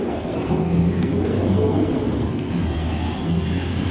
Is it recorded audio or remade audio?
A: remade